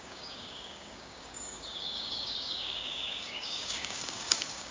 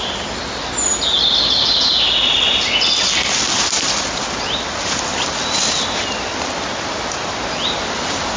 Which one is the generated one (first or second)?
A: first